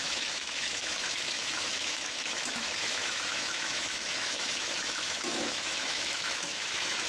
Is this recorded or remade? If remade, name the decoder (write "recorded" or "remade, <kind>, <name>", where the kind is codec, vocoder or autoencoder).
remade, autoencoder, DAC-VAE